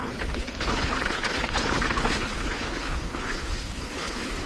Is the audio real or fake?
fake